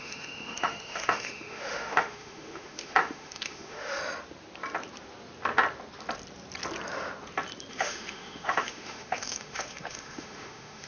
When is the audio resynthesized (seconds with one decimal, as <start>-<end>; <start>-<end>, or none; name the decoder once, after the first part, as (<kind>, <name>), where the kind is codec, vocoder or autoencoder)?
0.0-4.0 (autoencoder, DAC-VAE); 7.7-10.9